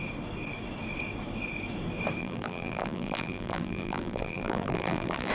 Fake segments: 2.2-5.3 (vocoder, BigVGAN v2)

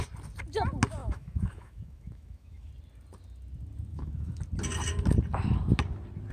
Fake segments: 1.0-2.7 (autoencoder, DAC-VAE); 3.9-4.4

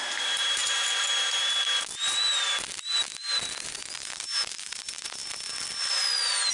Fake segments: 0.0-0.6 (vocoder, BigVGAN v2); 4.0-5.2

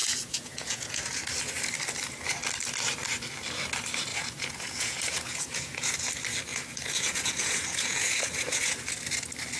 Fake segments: 0.0-1.2 (vocoder, Vocos); 4.1-6.1; 6.5-8.9

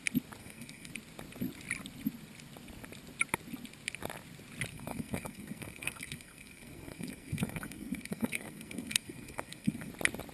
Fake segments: 0.4-0.9 (codec, SNAC); 4.7-9.9

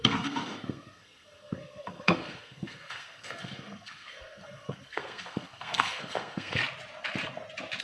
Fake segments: 0.0-6.6 (codec, SNAC)

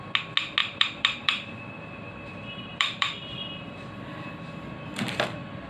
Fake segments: 0.6-3.6 (vocoder, BigVGAN v2)

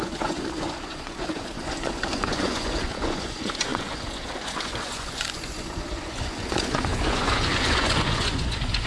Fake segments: 0.0-8.9 (vocoder, Vocos)